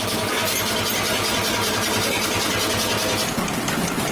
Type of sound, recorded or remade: recorded